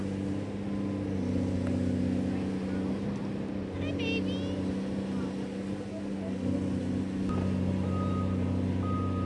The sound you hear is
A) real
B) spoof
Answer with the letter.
A